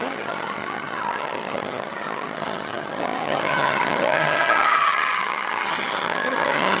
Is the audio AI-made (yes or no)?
yes